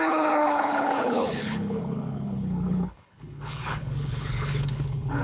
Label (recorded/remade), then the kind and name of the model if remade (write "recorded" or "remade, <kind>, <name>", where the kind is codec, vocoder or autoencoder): remade, codec, HILCodec